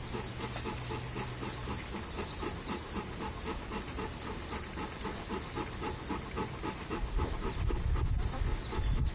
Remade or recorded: recorded